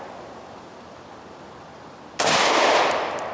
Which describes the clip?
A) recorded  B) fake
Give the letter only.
A